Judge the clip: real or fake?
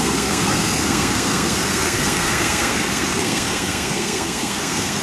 fake